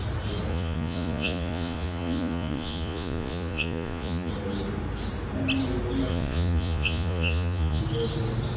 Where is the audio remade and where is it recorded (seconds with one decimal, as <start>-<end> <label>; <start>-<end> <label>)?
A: 0.0-0.5 recorded; 0.5-4.3 remade; 4.3-6.1 recorded; 6.1-7.8 remade; 7.8-8.6 recorded

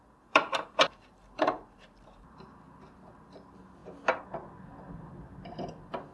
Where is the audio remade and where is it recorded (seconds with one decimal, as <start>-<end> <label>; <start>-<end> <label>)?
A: 0.0-3.8 remade; 3.8-4.6 recorded; 4.6-6.1 remade